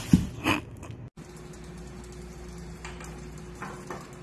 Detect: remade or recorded recorded